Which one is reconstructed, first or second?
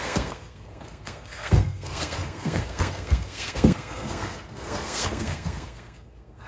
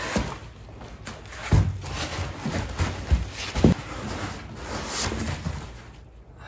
first